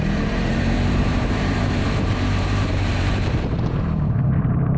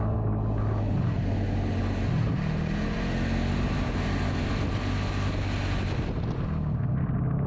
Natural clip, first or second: second